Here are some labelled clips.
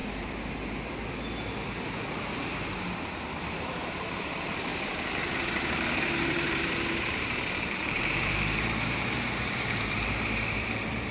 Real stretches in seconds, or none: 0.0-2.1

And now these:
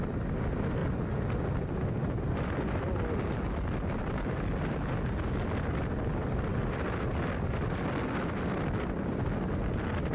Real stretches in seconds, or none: 0.0-6.5; 7.0-10.1

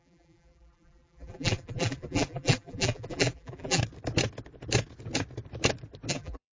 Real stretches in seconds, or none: 3.8-6.1

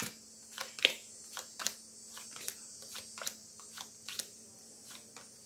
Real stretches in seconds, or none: 0.0-5.5

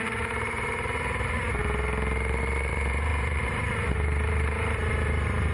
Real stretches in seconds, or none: 1.6-2.7

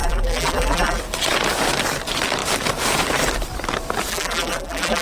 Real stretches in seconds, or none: 1.0-4.1